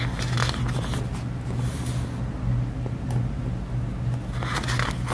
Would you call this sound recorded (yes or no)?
yes